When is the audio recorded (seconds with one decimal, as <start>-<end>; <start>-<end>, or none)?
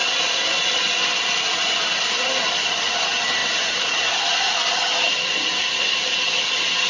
0.0-6.9